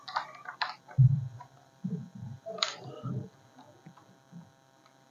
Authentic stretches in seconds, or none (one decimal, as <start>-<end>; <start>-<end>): 3.1-5.1